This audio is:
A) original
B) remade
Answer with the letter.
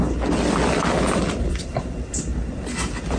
A